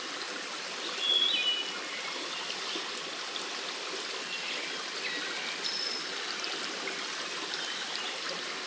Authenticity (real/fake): real